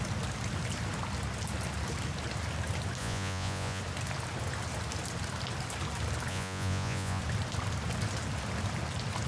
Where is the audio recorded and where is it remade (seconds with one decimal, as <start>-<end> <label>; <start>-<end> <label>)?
0.0-3.0 recorded; 3.0-3.8 remade; 3.8-6.3 recorded; 6.3-7.2 remade; 7.2-9.3 recorded